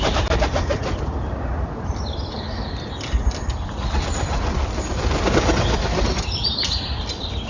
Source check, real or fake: real